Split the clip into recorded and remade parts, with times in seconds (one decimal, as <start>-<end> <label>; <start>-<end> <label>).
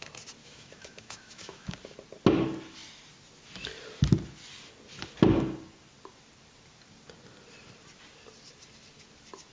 0.0-0.4 recorded; 0.4-1.7 remade; 1.7-9.5 recorded